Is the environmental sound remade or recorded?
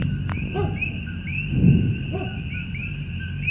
recorded